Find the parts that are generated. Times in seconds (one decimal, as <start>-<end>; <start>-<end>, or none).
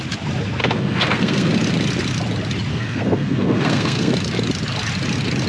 0.6-1.5; 2.7-4.1